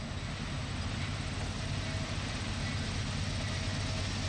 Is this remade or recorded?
recorded